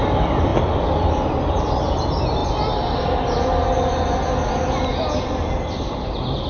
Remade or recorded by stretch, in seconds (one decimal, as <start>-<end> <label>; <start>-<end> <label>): 0.0-2.4 remade; 2.4-6.5 recorded